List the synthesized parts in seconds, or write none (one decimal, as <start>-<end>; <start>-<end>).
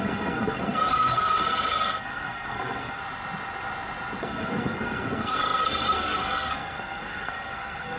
0.0-3.0; 4.2-8.0